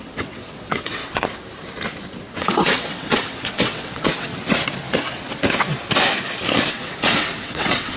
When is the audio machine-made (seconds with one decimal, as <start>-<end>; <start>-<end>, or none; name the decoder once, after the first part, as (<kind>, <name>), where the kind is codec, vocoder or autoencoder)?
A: 0.0-1.0 (vocoder, WaveNeXt); 2.3-4.3; 6.7-8.0